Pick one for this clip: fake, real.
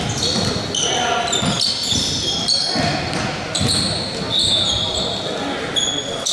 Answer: real